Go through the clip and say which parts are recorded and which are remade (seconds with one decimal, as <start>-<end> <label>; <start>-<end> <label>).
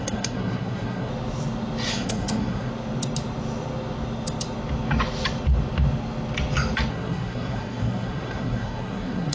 0.0-1.1 remade; 1.1-1.9 recorded; 1.9-2.7 remade; 2.7-6.9 recorded; 6.9-9.3 remade